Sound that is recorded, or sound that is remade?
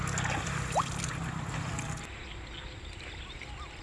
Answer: recorded